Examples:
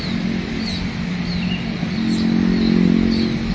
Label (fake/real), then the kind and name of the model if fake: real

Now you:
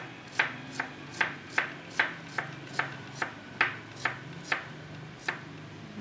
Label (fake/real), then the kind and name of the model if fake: real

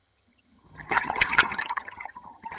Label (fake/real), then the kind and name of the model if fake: fake, vocoder, HiFi-GAN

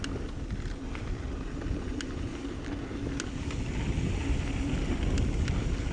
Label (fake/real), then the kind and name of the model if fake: real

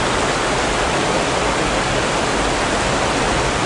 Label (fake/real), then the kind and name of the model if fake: real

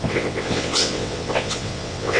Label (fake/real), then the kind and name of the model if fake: fake, vocoder, WaveNeXt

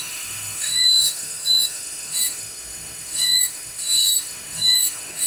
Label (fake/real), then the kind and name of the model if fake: fake, autoencoder, DAC-VAE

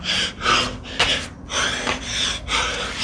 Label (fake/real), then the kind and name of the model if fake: real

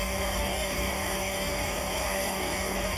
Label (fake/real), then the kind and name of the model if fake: fake, codec, DAC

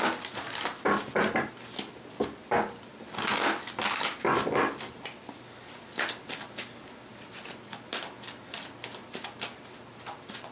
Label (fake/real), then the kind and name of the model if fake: real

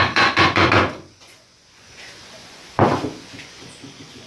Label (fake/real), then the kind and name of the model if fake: fake, vocoder, Vocos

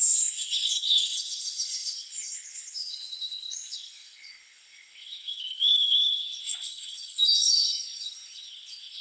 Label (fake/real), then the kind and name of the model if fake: fake, codec, HILCodec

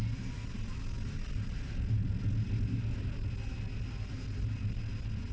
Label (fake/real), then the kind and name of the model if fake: real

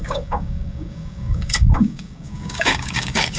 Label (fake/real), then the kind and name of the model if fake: fake, codec, DAC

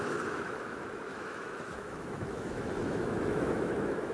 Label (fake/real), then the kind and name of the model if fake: fake, autoencoder, DAC-VAE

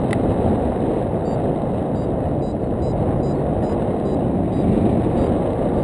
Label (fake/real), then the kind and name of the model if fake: real